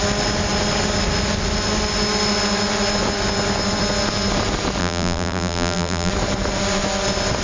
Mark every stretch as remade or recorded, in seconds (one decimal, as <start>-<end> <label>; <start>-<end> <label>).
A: 0.0-4.8 recorded; 4.8-6.1 remade; 6.1-7.4 recorded